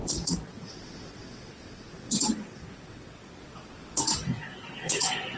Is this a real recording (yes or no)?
no